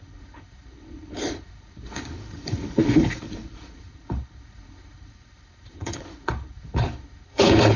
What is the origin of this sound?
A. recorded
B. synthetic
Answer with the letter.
B